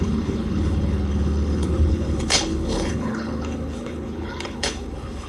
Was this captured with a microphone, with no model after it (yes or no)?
no